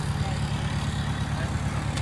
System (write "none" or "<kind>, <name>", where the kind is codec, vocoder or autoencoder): none